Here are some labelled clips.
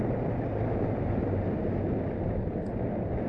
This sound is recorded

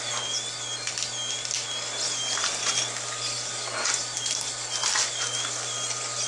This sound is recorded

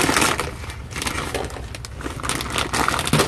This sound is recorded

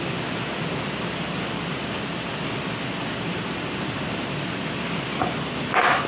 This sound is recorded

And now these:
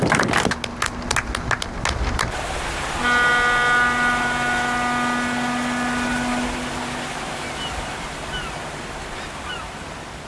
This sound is recorded